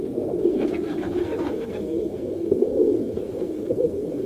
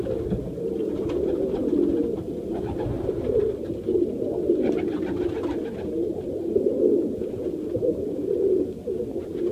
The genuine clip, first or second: second